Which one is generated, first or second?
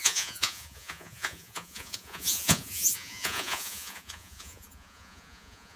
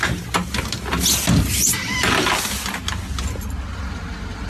first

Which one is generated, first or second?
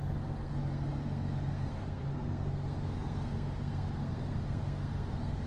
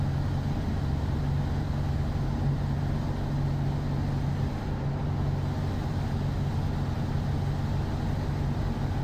first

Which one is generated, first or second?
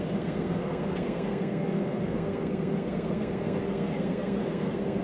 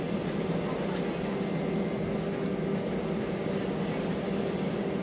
first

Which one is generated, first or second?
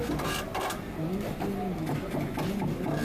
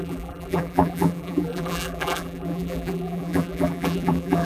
second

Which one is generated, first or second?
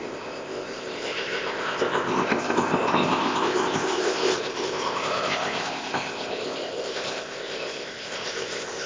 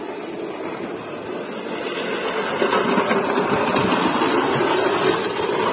first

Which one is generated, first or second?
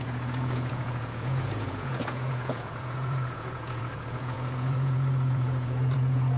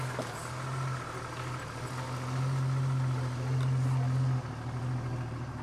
first